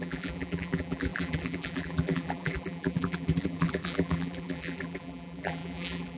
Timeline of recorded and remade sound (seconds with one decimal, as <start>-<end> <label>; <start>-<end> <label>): 0.0-6.2 remade